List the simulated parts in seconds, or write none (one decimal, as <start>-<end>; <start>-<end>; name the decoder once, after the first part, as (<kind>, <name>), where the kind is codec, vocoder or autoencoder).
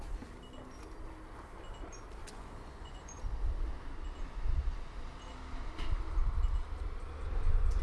2.2-3.2 (vocoder, Vocos)